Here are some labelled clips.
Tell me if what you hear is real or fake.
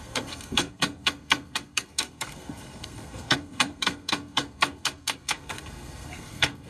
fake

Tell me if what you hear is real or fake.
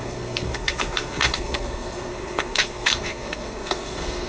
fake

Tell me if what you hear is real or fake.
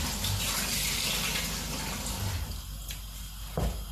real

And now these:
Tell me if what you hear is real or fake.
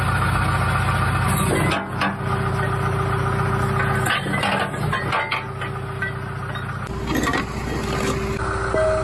real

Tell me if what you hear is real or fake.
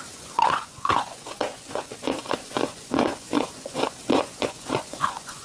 fake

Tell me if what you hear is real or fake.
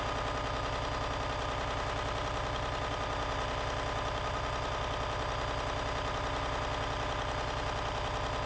real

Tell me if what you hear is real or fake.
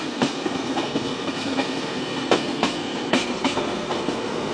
fake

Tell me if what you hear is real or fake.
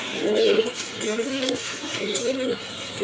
fake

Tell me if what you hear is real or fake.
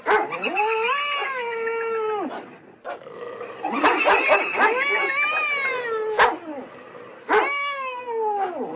real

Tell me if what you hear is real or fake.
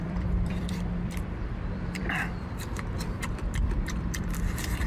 fake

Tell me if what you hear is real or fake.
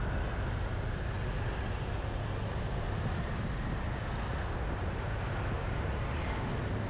real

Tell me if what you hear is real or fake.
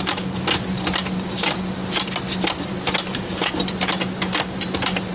real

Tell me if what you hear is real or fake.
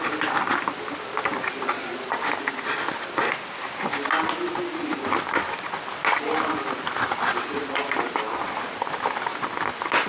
real